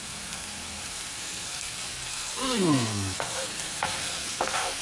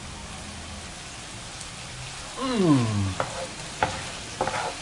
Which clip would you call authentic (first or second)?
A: second